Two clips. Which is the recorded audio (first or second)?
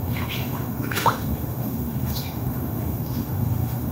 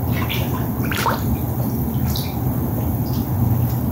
second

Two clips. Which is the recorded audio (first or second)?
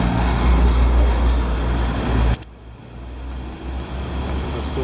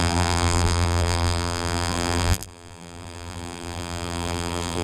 first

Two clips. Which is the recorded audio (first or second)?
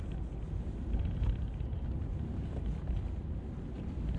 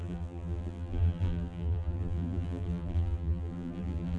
first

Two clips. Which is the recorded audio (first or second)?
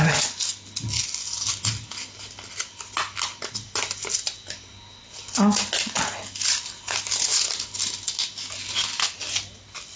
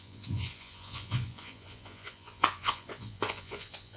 first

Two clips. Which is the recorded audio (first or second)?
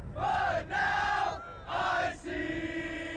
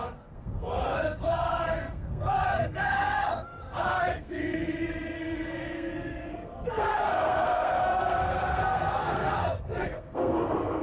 first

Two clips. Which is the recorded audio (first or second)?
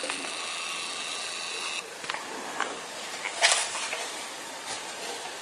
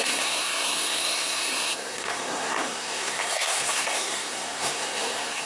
first